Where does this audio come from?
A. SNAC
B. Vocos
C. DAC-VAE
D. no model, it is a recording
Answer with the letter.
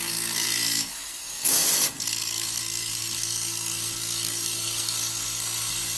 A